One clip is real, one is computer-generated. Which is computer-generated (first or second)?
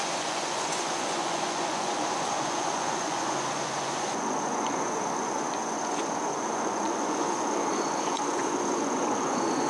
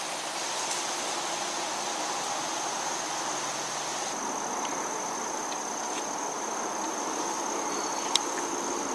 first